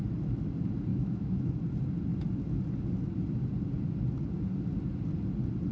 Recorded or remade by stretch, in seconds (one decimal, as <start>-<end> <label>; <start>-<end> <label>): 0.0-0.9 recorded; 0.9-1.6 remade; 1.6-5.7 recorded